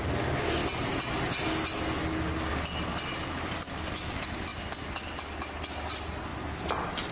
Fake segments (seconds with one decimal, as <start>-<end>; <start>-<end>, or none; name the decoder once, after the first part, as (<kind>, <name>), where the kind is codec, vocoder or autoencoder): none